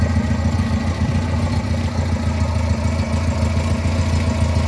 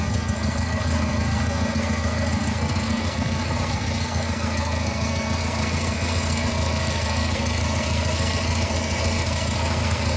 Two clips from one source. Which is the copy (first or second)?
second